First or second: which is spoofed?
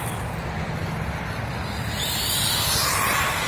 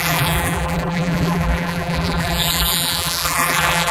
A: second